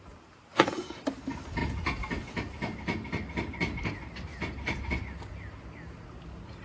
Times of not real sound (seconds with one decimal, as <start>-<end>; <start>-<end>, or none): 0.5-1.0